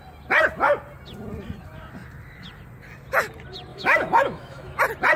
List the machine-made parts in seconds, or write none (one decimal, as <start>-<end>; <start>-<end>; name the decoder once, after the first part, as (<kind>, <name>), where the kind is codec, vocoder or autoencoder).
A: 3.7-4.8 (autoencoder, DAC-VAE)